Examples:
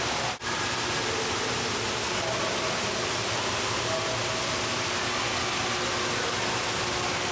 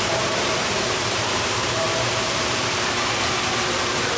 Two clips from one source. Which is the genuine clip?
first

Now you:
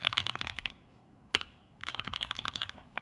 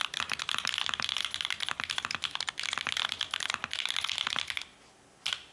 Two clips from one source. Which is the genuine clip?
second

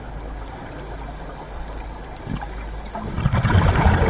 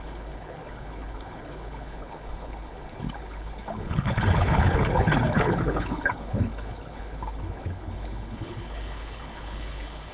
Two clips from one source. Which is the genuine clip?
first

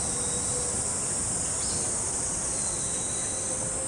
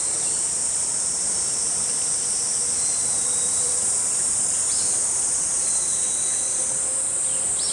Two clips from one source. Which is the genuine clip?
first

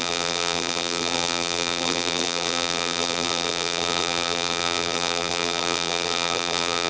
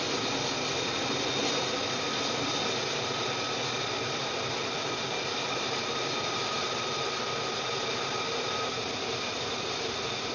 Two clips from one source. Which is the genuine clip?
second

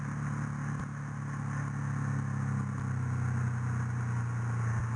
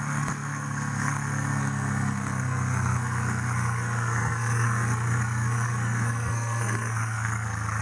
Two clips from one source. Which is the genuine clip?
first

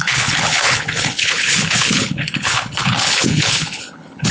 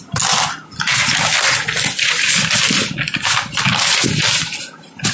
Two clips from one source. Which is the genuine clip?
second